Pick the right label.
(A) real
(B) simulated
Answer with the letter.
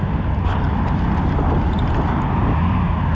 A